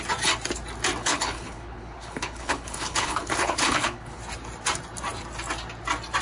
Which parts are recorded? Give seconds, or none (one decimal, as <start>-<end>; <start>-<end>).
0.0-1.0; 4.2-6.2